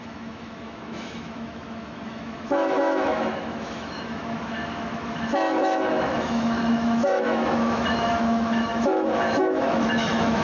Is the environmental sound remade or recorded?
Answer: remade